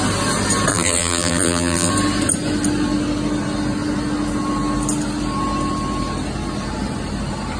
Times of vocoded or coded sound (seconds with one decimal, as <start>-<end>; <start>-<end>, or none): 0.7-1.9